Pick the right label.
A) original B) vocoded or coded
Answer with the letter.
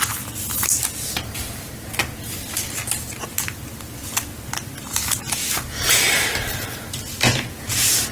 A